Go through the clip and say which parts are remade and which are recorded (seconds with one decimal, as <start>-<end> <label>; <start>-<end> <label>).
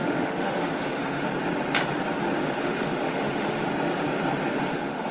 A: 0.0-1.3 remade; 1.3-2.2 recorded; 2.2-3.6 remade; 3.6-4.6 recorded; 4.6-5.1 remade